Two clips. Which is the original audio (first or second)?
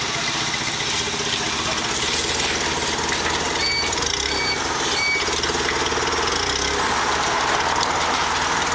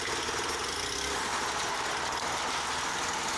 first